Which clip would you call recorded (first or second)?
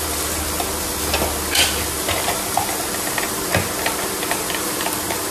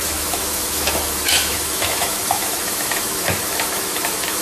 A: first